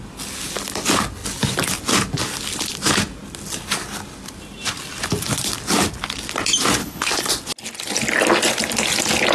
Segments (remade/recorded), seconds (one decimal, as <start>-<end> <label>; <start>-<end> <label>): 0.0-6.8 recorded; 6.8-7.3 remade; 7.3-9.3 recorded